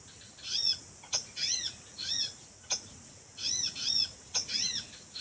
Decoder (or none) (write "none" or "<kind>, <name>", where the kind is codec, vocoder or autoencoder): vocoder, Vocos